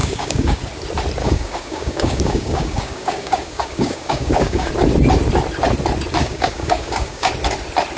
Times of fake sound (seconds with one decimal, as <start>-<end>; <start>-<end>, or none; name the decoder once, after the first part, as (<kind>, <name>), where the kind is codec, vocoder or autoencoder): 0.0-0.6 (codec, DAC); 1.2-4.7; 6.2-7.3